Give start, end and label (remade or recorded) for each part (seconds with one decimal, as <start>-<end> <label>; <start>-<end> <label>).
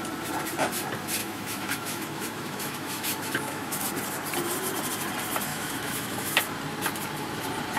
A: 0.0-1.2 recorded; 1.2-3.9 remade; 3.9-5.5 recorded; 5.5-6.4 remade; 6.4-7.8 recorded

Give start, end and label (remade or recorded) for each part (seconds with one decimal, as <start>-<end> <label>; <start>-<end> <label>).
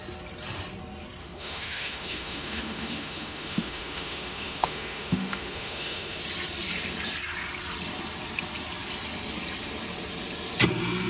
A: 0.0-1.2 recorded; 1.2-6.2 remade; 6.2-11.1 recorded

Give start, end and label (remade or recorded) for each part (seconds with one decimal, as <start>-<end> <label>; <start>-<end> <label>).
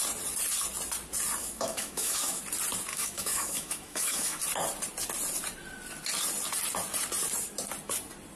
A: 0.0-1.4 recorded; 1.4-2.4 remade; 2.4-2.9 recorded; 2.9-4.4 remade; 4.4-8.4 recorded